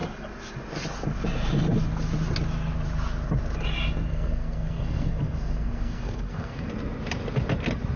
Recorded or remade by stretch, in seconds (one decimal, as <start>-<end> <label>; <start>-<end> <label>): 0.0-4.1 recorded; 4.1-6.7 remade; 6.7-8.0 recorded

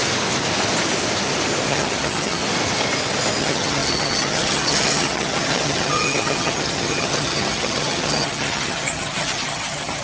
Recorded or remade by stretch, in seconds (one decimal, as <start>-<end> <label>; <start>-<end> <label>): 0.0-1.7 recorded; 1.7-2.4 remade; 2.4-3.4 recorded; 3.4-10.0 remade

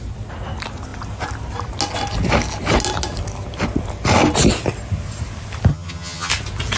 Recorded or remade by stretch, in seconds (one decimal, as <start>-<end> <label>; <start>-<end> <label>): 0.0-5.7 recorded; 5.7-6.3 remade; 6.3-6.8 recorded

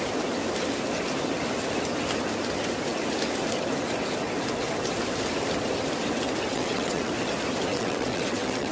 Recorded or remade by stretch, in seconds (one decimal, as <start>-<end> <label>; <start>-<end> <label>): 0.0-6.5 recorded; 6.5-7.1 remade; 7.1-7.7 recorded; 7.7-8.7 remade

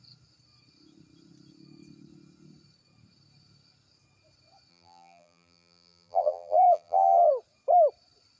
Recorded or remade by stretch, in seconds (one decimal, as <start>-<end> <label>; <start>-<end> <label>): 0.0-4.7 recorded; 4.7-7.3 remade; 7.3-8.4 recorded

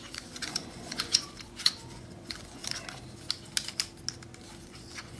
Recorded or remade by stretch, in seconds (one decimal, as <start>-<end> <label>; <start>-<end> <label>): 0.0-2.6 remade; 2.6-4.6 recorded; 4.6-5.2 remade

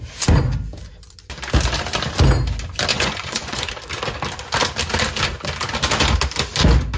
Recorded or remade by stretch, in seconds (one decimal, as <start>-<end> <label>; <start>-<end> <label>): 0.0-2.9 recorded; 2.9-3.7 remade; 3.7-7.0 recorded

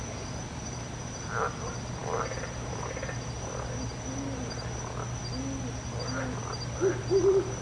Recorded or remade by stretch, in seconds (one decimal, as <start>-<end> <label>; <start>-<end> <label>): 0.0-7.6 recorded